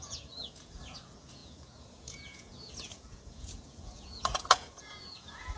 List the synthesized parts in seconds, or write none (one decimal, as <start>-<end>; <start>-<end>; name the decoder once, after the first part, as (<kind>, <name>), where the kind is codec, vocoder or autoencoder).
0.0-5.6 (vocoder, Vocos)

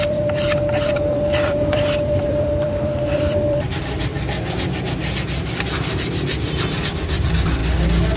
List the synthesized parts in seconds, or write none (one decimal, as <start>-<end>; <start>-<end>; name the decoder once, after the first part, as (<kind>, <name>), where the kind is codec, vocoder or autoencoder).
0.0-4.1 (vocoder, BigVGAN v2); 5.4-7.6

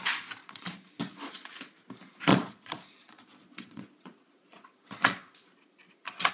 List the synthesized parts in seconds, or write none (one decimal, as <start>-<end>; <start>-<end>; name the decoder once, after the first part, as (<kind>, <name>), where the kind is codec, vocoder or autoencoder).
0.4-1.5 (vocoder, Vocos); 2.3-6.3

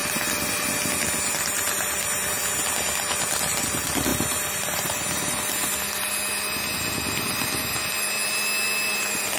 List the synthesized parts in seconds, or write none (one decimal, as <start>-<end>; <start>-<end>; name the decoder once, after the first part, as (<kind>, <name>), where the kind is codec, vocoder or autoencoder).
none